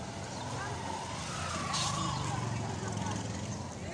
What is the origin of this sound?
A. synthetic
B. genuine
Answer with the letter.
B